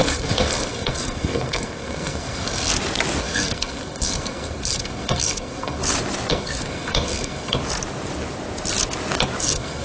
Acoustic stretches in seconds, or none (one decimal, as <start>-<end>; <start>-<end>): 2.7-3.2; 5.8-6.3; 7.6-9.4